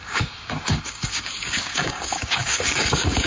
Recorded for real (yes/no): no